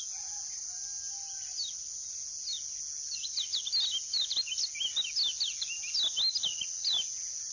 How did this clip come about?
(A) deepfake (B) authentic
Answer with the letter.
B